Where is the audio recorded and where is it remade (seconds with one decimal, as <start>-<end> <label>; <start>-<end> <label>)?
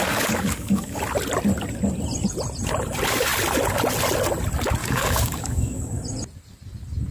0.0-1.0 remade; 1.0-4.8 recorded; 4.8-6.0 remade; 6.0-7.1 recorded